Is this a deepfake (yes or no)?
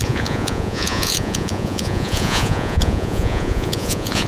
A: yes